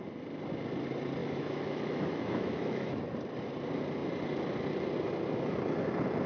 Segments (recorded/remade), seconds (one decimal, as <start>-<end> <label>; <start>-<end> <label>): 0.0-1.2 recorded; 1.2-3.0 remade; 3.0-6.3 recorded